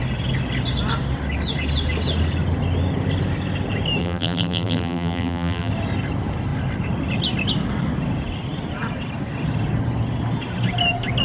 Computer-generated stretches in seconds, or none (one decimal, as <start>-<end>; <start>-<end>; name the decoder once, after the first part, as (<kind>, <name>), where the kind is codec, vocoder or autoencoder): 4.0-5.7 (vocoder, BigVGAN v2)